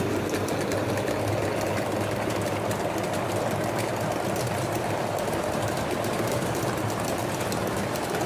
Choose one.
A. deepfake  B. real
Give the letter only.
B